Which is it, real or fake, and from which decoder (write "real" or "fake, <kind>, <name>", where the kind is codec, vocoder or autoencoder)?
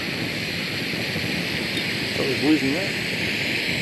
real